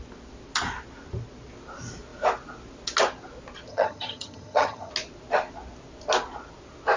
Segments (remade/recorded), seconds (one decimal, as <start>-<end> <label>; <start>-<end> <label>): 0.0-3.7 recorded; 3.7-4.9 remade; 4.9-7.0 recorded